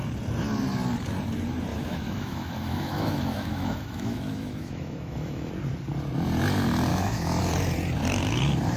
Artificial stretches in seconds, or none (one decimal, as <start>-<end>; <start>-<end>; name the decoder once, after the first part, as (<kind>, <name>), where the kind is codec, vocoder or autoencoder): 1.7-5.5 (autoencoder, DAC-VAE); 6.9-7.4